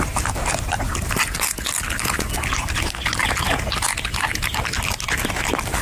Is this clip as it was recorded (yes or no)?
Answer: yes